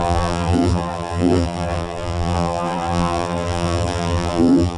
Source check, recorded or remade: remade